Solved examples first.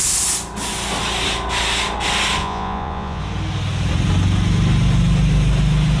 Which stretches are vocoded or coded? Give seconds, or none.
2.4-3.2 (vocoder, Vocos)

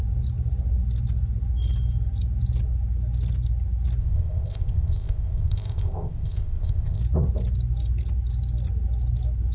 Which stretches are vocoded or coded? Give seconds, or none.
4.0-7.0 (codec, ZipCodec)

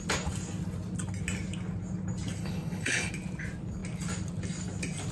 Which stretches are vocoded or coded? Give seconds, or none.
2.4-3.1 (codec, HILCodec)

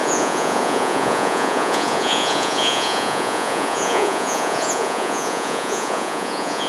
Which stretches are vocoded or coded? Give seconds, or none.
0.0-6.7 (vocoder, Vocos)